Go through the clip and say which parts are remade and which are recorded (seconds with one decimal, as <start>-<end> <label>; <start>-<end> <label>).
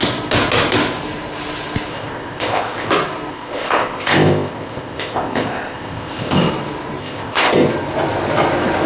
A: 0.0-1.9 recorded; 1.9-2.9 remade; 2.9-3.3 recorded; 3.3-6.4 remade; 6.4-7.0 recorded; 7.0-7.7 remade; 7.7-8.9 recorded